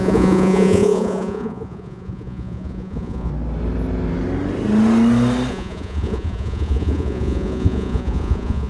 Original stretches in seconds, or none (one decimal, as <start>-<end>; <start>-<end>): 3.3-5.5